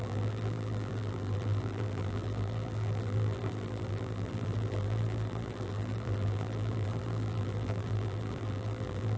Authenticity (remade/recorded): remade